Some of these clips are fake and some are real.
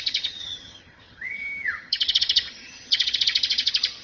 fake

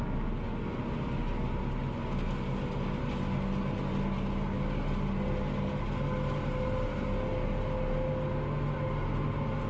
real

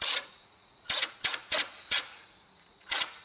fake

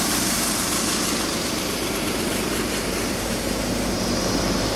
fake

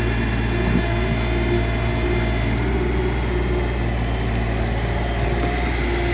real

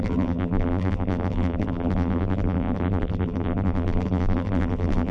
fake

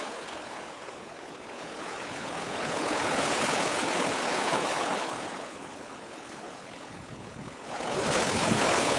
fake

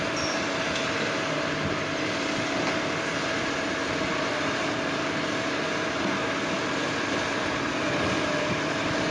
real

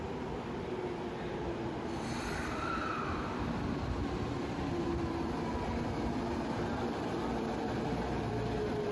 fake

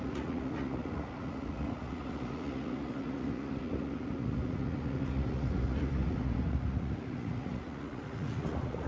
fake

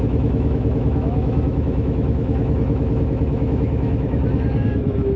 fake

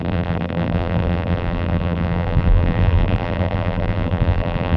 fake